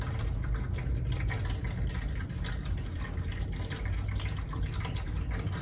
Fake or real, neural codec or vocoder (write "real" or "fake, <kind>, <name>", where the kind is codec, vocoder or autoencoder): real